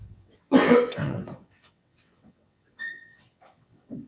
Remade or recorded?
remade